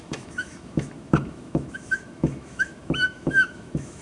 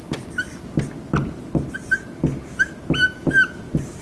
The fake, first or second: first